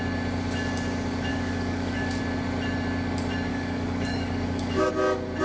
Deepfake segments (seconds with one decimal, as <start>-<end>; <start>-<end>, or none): 1.3-2.2; 3.5-4.9